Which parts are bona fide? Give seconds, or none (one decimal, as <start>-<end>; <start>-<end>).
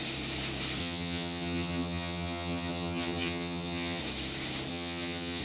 0.0-0.8; 4.0-4.7